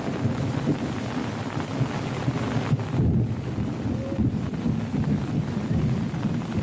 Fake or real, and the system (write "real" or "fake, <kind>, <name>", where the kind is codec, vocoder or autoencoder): real